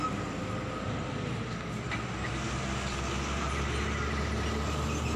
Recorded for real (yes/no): yes